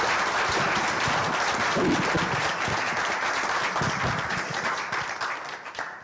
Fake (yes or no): no